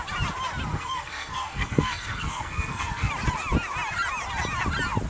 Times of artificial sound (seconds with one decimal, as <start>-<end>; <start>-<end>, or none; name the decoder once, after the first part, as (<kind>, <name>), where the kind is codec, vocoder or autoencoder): 0.7-3.1 (codec, SNAC)